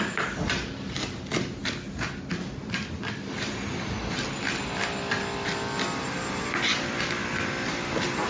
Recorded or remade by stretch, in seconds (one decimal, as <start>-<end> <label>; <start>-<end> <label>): 0.0-8.3 recorded